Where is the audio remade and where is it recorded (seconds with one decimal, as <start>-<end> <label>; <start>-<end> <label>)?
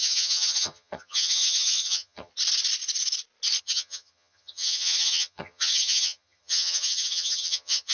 0.0-2.3 remade; 2.3-3.6 recorded; 3.6-7.9 remade